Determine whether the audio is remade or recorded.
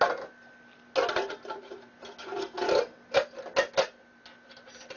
recorded